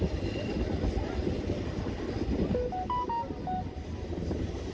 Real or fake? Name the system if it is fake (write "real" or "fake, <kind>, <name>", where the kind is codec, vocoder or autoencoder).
real